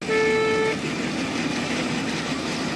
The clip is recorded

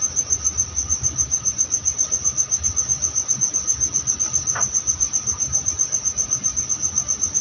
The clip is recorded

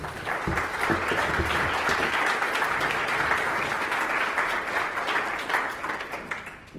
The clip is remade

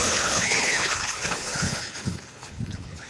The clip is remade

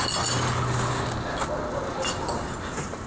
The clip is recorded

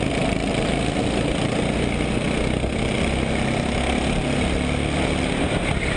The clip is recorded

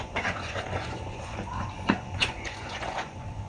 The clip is remade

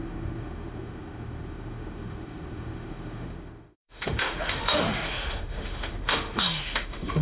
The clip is remade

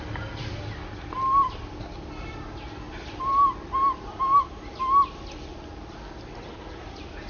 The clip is recorded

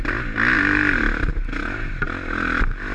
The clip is recorded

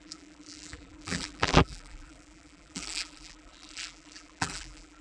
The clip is remade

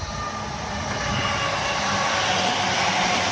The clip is recorded